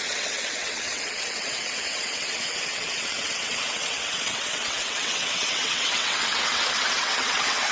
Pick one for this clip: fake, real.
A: fake